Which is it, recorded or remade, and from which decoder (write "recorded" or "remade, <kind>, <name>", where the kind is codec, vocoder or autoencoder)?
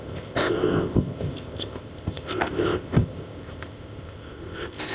remade, codec, ZipCodec